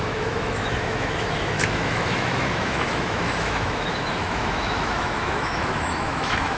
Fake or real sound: fake